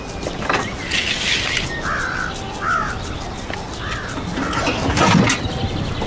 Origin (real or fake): real